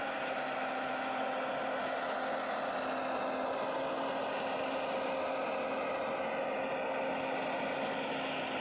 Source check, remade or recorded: recorded